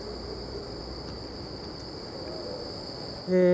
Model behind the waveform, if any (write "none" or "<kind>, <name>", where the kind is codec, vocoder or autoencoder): none